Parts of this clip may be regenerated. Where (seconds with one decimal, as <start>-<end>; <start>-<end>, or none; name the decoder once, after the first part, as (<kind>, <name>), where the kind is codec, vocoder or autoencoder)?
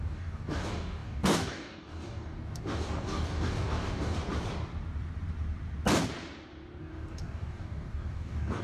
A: 0.0-4.2 (codec, DAC); 6.8-8.6